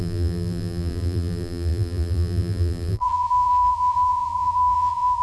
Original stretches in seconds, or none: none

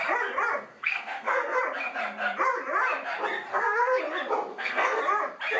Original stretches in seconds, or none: 0.0-0.7; 1.6-3.5; 4.0-4.5; 5.0-5.6